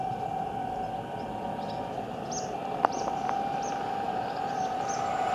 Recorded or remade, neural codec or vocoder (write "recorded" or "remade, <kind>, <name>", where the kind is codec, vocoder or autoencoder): recorded